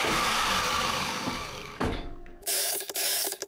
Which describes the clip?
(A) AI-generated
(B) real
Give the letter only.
A